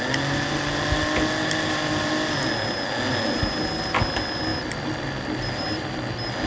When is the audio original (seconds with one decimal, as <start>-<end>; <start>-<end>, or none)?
0.0-6.5